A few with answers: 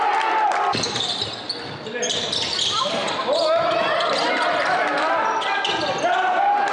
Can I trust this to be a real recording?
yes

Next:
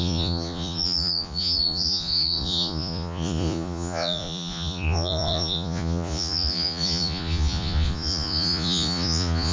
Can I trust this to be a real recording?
no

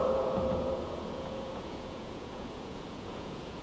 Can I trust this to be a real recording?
no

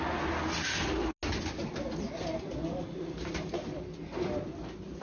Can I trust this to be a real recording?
yes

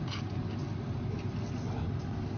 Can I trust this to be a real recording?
yes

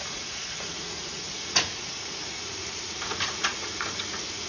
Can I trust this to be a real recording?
no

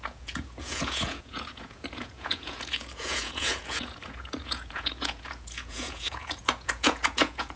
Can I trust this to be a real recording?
no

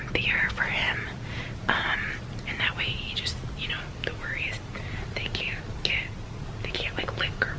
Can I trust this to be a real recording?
yes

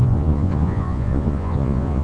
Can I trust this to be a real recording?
no